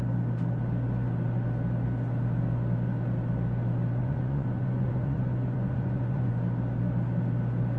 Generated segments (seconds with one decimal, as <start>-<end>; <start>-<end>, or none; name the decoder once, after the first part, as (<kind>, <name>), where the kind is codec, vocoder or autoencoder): 4.0-6.3 (vocoder, Vocos)